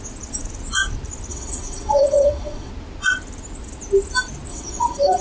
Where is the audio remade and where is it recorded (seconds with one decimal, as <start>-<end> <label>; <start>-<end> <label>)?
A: 0.0-1.3 recorded; 1.3-2.7 remade; 2.7-4.5 recorded; 4.5-5.2 remade